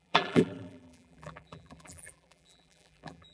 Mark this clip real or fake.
fake